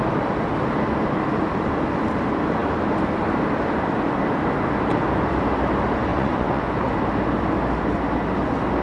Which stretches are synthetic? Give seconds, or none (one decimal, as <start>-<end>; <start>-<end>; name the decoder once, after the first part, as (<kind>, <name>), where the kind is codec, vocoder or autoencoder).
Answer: 6.1-6.9 (vocoder, Vocos)